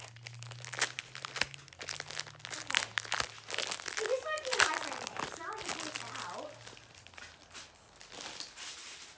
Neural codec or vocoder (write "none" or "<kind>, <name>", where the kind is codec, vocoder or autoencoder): none